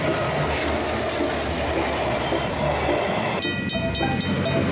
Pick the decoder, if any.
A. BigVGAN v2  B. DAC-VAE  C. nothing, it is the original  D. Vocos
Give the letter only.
C